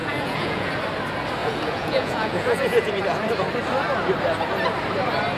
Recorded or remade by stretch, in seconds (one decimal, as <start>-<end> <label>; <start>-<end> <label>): 0.0-0.7 remade; 0.7-1.4 recorded; 1.4-2.9 remade; 2.9-5.4 recorded